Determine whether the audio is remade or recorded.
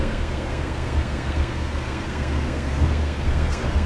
remade